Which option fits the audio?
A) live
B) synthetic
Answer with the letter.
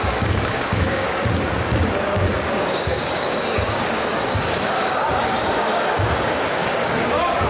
B